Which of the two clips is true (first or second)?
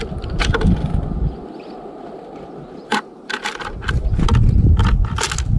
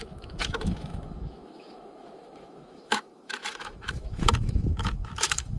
first